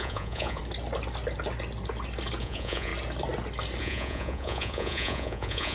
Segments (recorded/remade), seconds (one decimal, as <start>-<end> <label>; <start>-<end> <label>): 0.0-0.6 remade; 0.6-2.4 recorded; 2.4-2.9 remade; 2.9-3.8 recorded; 3.8-5.7 remade